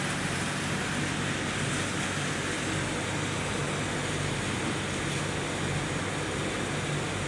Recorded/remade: recorded